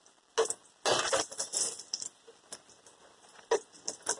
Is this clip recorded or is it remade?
recorded